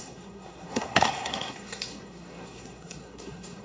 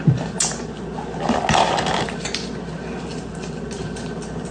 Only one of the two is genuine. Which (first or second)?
second